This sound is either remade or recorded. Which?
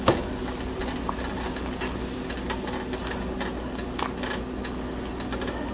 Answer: recorded